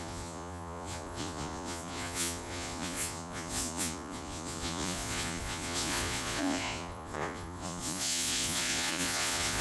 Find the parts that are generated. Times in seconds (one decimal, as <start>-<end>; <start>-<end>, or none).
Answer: 0.0-9.6